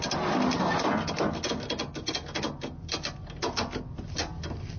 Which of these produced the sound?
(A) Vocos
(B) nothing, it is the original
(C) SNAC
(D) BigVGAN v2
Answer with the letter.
B